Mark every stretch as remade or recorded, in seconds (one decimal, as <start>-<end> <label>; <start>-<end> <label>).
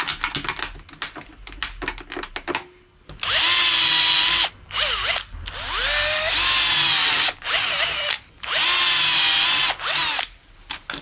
0.0-11.0 recorded